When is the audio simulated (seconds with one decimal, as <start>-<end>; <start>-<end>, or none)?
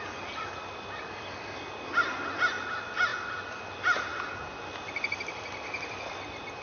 none